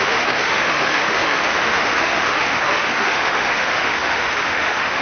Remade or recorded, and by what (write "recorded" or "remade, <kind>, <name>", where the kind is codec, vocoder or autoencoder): remade, autoencoder, DAC-VAE